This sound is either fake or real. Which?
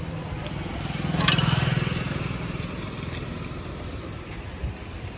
real